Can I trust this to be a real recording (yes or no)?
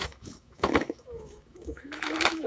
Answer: no